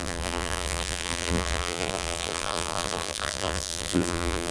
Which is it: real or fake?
fake